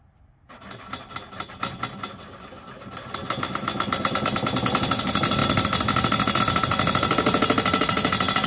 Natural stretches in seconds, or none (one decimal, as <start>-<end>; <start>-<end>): 0.0-8.5

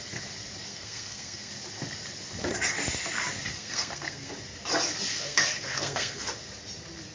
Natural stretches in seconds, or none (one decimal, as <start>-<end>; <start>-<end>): 0.0-0.7; 1.5-3.5; 4.3-5.1; 6.3-7.1